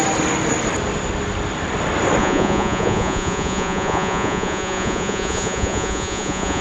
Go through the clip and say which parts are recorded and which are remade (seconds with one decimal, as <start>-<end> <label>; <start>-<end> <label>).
0.0-2.2 recorded; 2.2-6.6 remade